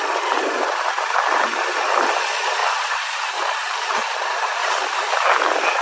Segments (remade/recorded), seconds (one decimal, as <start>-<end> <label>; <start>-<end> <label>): 0.0-2.6 recorded; 2.6-4.7 remade; 4.7-5.8 recorded